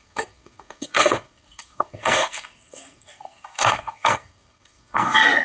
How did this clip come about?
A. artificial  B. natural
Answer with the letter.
A